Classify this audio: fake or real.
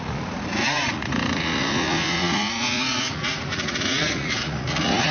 fake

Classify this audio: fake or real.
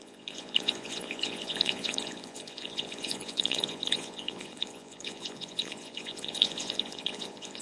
fake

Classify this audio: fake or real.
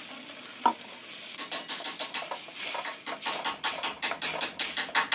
real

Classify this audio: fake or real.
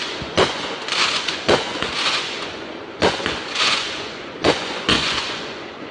fake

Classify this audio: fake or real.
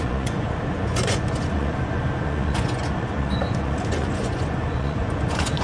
fake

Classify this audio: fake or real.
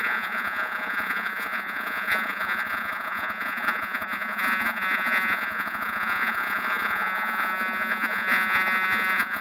fake